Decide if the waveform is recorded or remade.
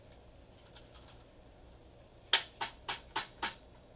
recorded